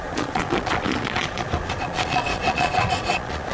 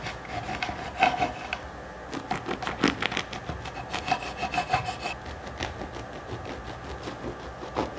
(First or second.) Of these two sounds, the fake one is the first